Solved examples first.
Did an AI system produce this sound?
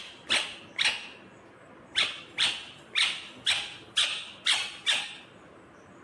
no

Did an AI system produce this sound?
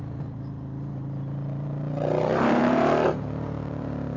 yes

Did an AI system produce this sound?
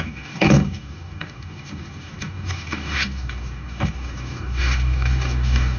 yes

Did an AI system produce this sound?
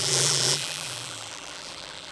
yes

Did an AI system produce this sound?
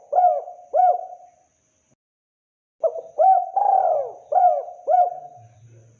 no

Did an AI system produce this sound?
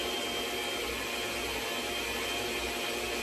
no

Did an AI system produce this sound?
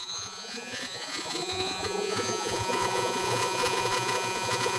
yes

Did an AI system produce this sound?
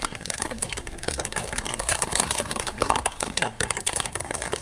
yes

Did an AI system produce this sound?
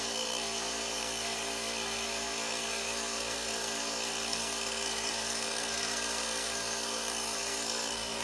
yes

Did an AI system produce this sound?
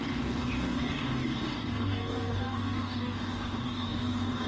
yes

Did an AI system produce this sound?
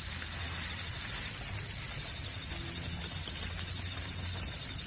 no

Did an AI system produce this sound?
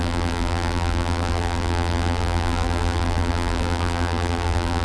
yes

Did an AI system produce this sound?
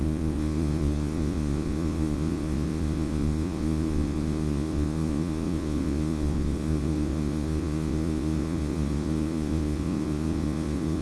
yes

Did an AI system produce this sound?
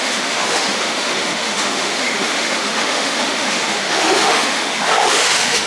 yes